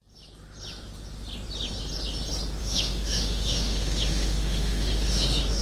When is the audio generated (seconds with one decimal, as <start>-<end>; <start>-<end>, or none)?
2.6-5.6